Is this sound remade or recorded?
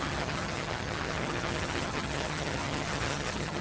remade